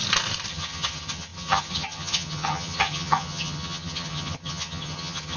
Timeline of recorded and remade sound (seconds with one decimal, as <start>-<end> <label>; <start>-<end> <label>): 0.0-0.5 recorded; 0.5-5.4 remade